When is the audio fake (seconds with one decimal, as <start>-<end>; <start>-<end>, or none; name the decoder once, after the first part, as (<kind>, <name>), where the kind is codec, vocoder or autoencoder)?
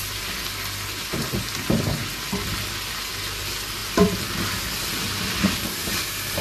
3.8-4.3 (vocoder, BigVGAN v2); 4.9-5.5